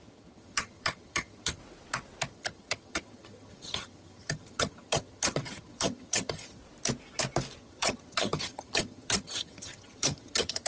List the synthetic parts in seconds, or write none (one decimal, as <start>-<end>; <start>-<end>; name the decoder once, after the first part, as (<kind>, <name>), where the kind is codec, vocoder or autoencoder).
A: 0.0-1.6 (vocoder, HiFi-GAN); 2.3-6.6; 7.6-10.7